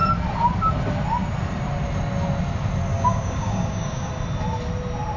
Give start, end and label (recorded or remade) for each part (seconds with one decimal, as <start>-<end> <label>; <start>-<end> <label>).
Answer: 0.0-2.9 recorded; 2.9-4.1 remade; 4.1-5.2 recorded